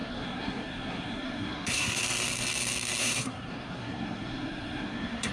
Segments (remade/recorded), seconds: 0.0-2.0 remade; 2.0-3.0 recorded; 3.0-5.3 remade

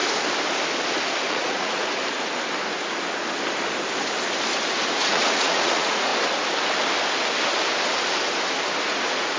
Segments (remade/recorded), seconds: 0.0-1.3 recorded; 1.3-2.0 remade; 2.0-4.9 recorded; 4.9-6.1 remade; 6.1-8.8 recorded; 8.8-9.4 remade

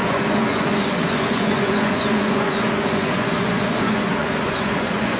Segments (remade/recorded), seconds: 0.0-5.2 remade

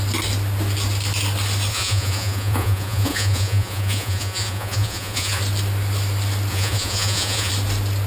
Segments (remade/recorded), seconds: 0.0-1.7 recorded; 1.7-5.4 remade; 5.4-6.5 recorded; 6.5-7.5 remade; 7.5-8.1 recorded

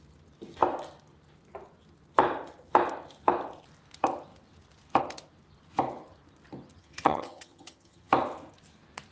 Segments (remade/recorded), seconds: 0.0-6.8 recorded; 6.8-8.1 remade; 8.1-9.1 recorded

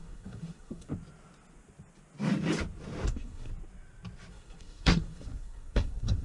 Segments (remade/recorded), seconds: 0.0-0.9 remade; 0.9-3.1 recorded; 3.1-3.5 remade; 3.5-4.3 recorded; 4.3-6.2 remade

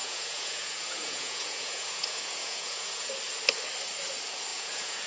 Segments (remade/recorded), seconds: 0.0-3.1 remade; 3.1-4.5 recorded; 4.5-5.1 remade